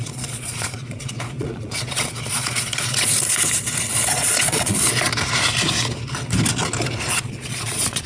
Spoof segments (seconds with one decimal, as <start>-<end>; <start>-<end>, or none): 0.0-3.2; 4.1-5.1; 7.1-8.1